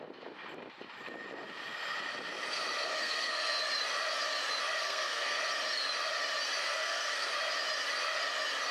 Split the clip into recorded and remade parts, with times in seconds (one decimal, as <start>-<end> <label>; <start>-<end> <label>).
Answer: 0.0-3.0 recorded; 3.0-3.6 remade; 3.6-4.8 recorded; 4.8-5.4 remade; 5.4-6.6 recorded; 6.6-7.3 remade; 7.3-8.7 recorded